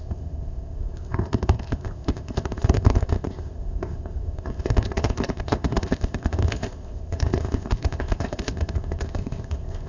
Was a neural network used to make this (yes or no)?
yes